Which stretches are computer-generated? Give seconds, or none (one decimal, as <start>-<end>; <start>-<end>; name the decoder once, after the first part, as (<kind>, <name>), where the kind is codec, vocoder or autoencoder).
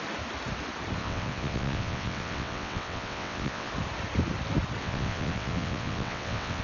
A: 1.0-3.7 (vocoder, WaveNeXt); 4.8-6.6